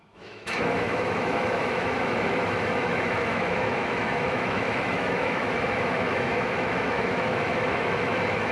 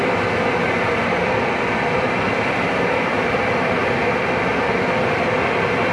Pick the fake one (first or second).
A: first